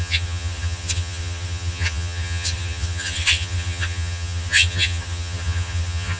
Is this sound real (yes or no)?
no